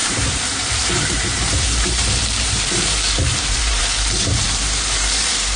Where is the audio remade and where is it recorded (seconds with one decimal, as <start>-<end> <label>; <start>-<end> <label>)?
0.0-5.6 remade